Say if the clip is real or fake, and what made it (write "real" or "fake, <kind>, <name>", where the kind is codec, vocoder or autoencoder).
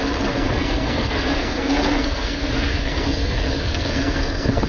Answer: fake, codec, SNAC